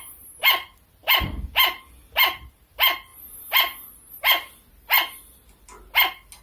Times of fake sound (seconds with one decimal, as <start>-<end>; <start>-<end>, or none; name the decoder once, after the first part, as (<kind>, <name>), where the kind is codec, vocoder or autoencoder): none